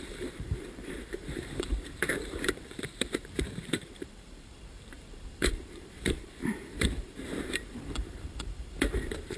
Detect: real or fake fake